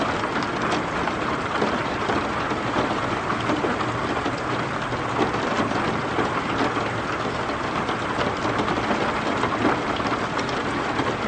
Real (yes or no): yes